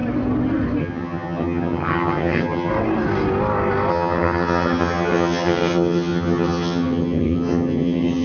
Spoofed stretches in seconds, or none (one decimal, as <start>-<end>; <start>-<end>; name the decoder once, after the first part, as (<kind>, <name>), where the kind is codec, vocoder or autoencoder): 0.8-2.7 (vocoder, HiFi-GAN); 3.9-8.2